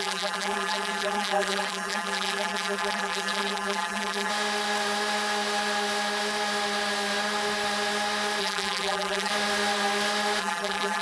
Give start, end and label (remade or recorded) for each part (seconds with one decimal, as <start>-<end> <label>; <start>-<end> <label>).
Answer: 0.0-4.3 remade; 4.3-8.4 recorded; 8.4-9.3 remade; 9.3-10.4 recorded; 10.4-11.0 remade